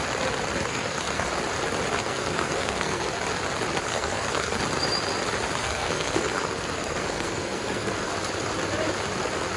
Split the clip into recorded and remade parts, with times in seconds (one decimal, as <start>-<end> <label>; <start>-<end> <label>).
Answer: 0.0-0.7 recorded; 0.7-1.3 remade; 1.3-2.0 recorded; 2.0-3.1 remade; 3.1-3.9 recorded; 3.9-4.6 remade; 4.6-5.6 recorded; 5.6-8.1 remade; 8.1-9.6 recorded